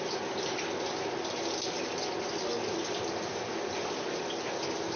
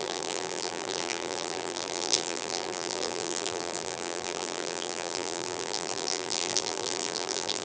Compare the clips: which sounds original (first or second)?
first